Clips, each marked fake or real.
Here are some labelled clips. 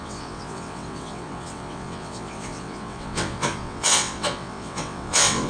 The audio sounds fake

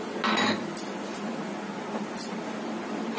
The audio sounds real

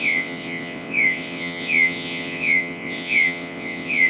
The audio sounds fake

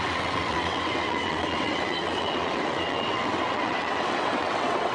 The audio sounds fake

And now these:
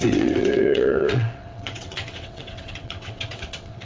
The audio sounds fake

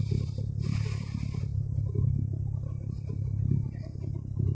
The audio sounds real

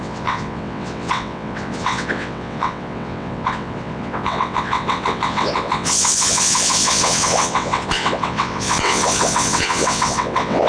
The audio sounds fake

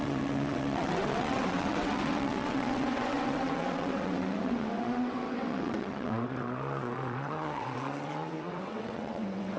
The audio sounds fake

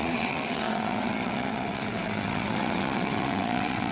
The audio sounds fake